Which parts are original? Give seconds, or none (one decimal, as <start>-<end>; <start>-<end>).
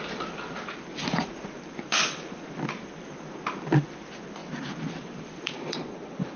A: 0.0-0.9; 1.6-6.4